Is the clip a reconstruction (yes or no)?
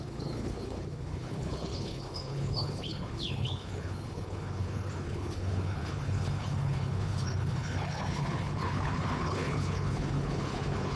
yes